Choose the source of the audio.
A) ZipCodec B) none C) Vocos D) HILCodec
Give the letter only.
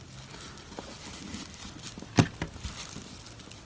B